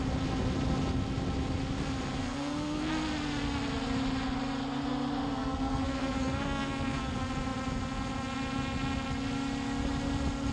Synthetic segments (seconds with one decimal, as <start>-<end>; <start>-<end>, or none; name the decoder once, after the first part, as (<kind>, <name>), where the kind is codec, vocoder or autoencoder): 2.2-2.9 (codec, SNAC); 5.4-7.1